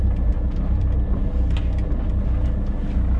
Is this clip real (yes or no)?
yes